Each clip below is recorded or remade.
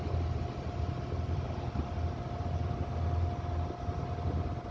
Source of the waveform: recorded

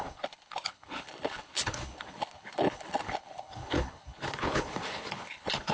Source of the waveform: remade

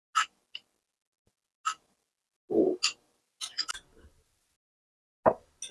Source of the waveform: recorded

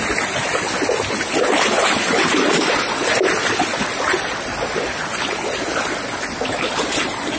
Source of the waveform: recorded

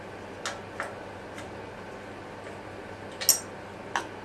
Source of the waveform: recorded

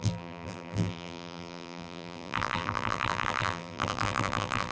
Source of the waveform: remade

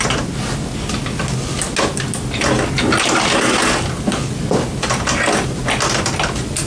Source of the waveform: recorded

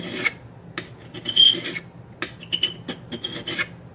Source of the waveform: recorded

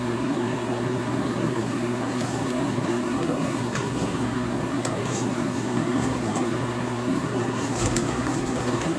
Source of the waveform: remade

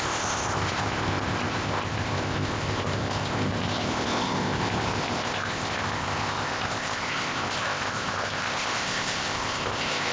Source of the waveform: remade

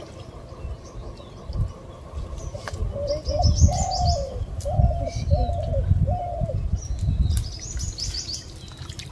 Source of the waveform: recorded